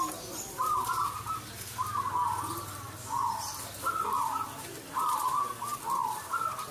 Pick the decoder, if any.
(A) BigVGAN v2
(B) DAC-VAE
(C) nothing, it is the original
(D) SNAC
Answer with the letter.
C